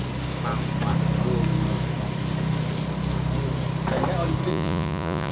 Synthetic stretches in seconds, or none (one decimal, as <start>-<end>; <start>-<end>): 4.5-5.3